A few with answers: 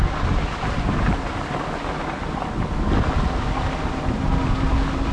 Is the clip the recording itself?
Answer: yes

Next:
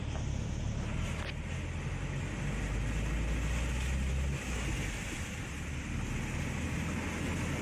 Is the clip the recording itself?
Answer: yes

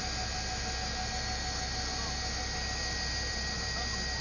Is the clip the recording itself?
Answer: yes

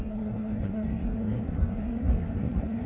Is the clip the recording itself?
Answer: no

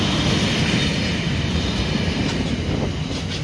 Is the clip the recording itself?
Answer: yes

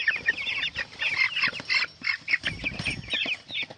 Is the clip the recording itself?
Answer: yes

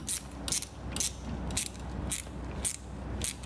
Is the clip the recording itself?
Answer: yes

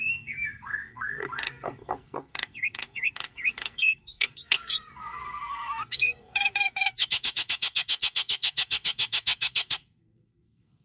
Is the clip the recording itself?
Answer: no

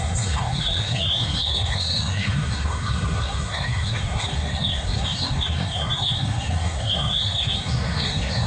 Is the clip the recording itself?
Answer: no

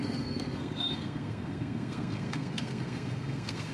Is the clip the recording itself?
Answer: no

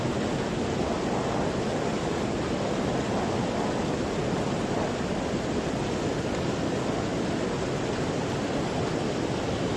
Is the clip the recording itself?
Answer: yes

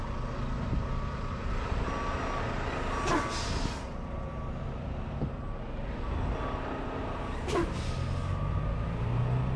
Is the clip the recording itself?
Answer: yes